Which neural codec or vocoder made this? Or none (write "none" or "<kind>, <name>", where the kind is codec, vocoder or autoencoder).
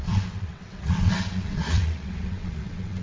vocoder, WaveNeXt